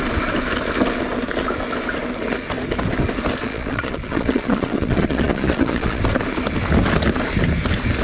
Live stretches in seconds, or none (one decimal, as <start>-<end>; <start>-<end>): 0.0-3.4; 6.0-8.0